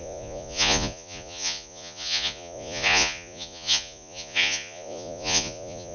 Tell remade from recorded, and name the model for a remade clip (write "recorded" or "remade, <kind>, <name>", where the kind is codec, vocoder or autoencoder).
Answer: remade, vocoder, Vocos